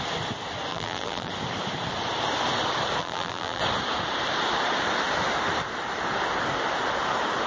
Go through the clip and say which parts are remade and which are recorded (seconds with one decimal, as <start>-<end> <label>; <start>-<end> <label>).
0.0-0.7 recorded; 0.7-1.3 remade; 1.3-3.0 recorded; 3.0-3.6 remade; 3.6-7.5 recorded